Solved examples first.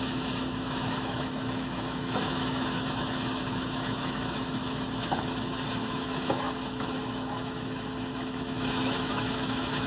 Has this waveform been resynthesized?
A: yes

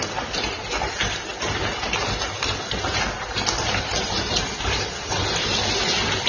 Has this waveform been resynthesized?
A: no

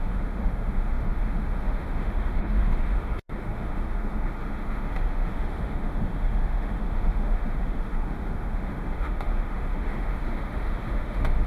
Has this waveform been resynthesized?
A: yes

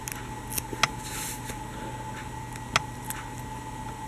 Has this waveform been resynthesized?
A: no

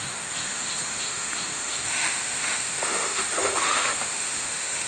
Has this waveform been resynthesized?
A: yes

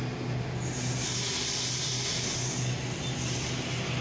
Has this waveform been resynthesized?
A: no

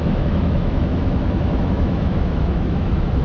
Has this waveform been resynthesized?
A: yes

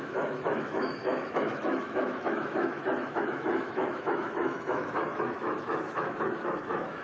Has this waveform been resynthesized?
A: yes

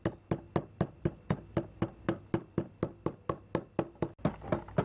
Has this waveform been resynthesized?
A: no